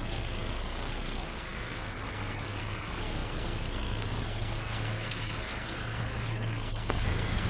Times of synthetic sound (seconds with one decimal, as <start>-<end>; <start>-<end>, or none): 0.0-7.5